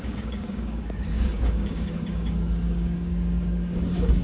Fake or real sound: fake